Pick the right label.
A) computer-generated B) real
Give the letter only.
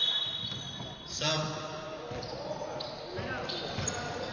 B